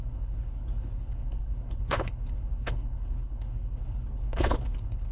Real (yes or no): no